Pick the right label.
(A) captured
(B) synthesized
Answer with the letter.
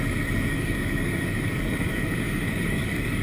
B